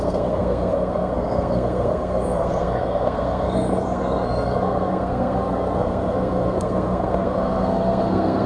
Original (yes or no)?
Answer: no